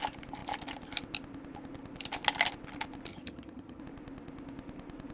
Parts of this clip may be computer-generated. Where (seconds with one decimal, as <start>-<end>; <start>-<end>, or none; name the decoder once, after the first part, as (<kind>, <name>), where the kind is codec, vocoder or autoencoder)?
3.1-3.8 (vocoder, HiFi-GAN)

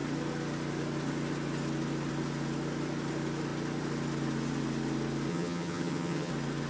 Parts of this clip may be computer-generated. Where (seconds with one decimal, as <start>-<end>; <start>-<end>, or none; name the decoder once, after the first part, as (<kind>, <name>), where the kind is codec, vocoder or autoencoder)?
5.3-6.3 (vocoder, HiFi-GAN)

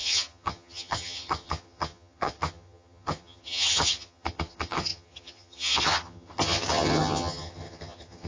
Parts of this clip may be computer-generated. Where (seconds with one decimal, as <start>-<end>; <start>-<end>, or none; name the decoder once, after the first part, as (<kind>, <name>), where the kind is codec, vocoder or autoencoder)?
0.0-8.3 (vocoder, HiFi-GAN)